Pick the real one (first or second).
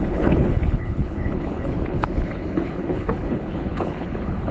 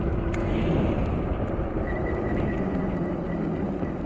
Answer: second